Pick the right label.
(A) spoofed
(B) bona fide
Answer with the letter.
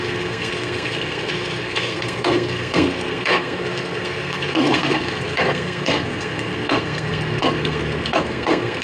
A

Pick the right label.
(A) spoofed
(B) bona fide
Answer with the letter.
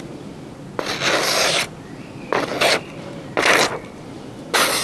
B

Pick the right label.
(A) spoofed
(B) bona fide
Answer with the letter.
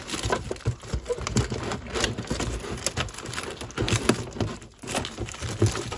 B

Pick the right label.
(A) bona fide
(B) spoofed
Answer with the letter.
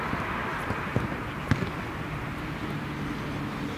A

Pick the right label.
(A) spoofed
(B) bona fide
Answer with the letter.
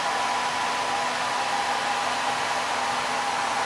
B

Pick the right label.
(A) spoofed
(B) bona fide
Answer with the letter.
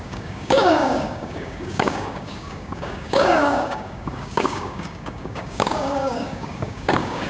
A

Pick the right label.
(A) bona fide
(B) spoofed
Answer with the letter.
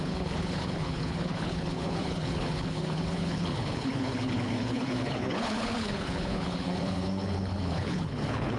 B